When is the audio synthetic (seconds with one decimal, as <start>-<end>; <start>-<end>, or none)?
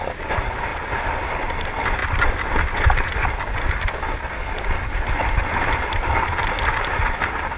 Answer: none